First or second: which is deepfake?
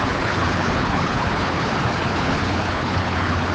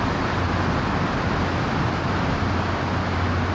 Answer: first